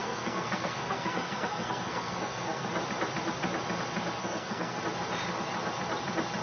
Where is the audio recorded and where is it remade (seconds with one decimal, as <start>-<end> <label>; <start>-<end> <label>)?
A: 0.0-2.7 remade; 2.7-4.2 recorded; 4.2-4.8 remade; 4.8-6.4 recorded